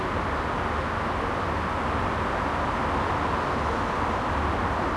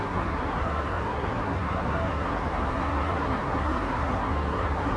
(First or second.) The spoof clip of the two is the second